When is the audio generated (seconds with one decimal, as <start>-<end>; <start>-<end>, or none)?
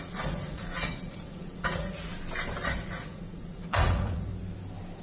0.0-2.1; 2.8-4.3